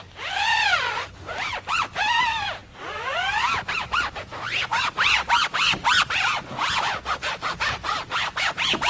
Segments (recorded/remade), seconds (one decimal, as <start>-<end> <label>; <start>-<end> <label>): 0.0-5.8 recorded; 5.8-8.9 remade